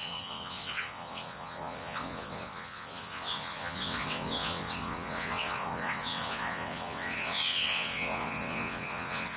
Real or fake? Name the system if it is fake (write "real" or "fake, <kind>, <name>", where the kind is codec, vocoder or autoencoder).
fake, vocoder, WaveNeXt